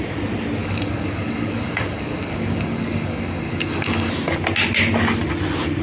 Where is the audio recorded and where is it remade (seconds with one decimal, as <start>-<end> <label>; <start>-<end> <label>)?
0.0-0.6 recorded; 0.6-4.1 remade; 4.1-5.8 recorded